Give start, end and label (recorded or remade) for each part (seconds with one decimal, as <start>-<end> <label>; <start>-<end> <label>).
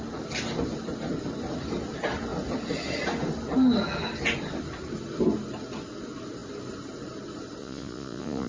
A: 0.0-7.6 recorded; 7.6-8.5 remade